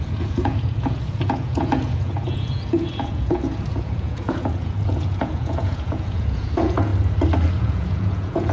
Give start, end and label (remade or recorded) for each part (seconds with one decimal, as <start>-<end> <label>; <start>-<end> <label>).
0.0-6.9 remade; 6.9-7.5 recorded; 7.5-8.5 remade